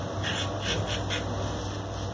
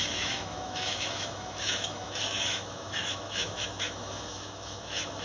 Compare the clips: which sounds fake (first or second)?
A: second